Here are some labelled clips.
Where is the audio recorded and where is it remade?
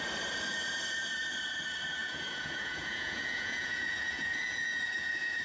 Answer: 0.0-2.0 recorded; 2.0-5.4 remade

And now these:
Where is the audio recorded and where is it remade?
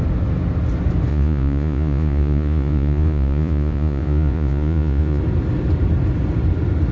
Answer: 0.0-1.1 recorded; 1.1-5.2 remade; 5.2-6.9 recorded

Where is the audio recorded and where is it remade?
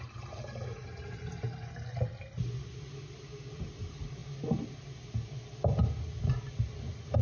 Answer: 0.0-7.2 recorded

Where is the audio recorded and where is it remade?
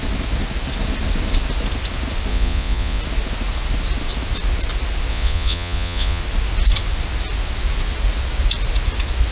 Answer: 0.0-2.3 recorded; 2.3-3.0 remade; 3.0-5.1 recorded; 5.1-6.2 remade; 6.2-9.3 recorded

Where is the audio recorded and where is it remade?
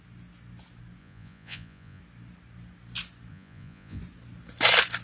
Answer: 0.0-1.0 recorded; 1.0-2.0 remade; 2.0-3.3 recorded; 3.3-4.0 remade; 4.0-5.0 recorded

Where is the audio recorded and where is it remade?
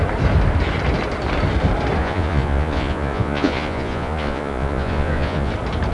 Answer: 0.0-2.0 recorded; 2.0-5.5 remade; 5.5-5.9 recorded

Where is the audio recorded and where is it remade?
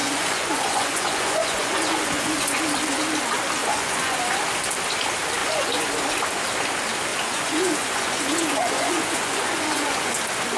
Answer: 0.0-2.6 remade; 2.6-3.6 recorded; 3.6-4.2 remade; 4.2-5.4 recorded; 5.4-5.9 remade; 5.9-7.1 recorded; 7.1-10.1 remade; 10.1-10.6 recorded